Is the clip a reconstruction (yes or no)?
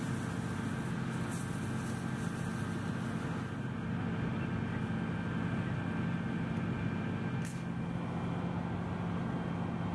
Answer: no